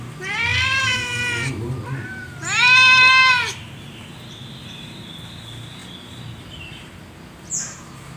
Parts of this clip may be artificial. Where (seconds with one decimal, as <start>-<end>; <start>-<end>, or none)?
none

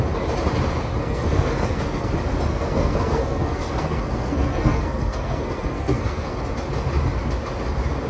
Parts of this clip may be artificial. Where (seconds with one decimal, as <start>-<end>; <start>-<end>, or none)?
1.0-2.1; 2.5-6.4

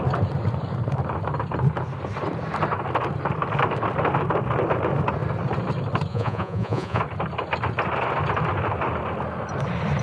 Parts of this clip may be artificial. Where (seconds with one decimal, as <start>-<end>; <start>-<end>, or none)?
6.1-7.0

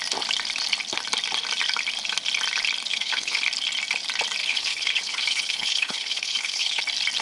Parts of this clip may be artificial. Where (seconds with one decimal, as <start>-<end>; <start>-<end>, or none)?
2.9-3.4; 4.4-6.8